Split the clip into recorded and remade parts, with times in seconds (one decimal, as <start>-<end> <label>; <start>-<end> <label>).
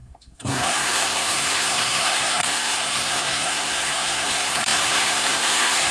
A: 0.0-5.9 remade